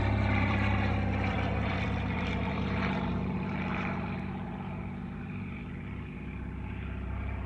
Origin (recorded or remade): remade